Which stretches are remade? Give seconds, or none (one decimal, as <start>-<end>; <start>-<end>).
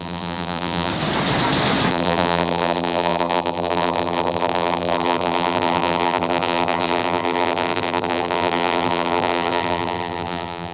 0.0-0.9; 1.9-10.7